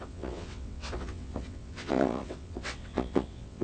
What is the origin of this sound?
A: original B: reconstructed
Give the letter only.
B